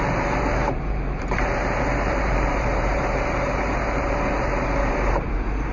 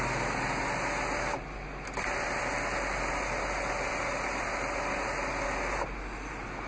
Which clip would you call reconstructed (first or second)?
first